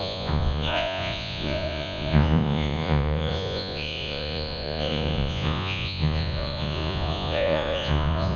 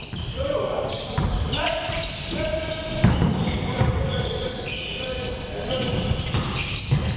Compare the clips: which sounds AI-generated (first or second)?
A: first